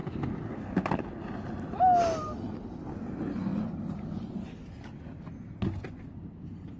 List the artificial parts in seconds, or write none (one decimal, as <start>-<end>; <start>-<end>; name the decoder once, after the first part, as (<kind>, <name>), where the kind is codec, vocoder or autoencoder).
none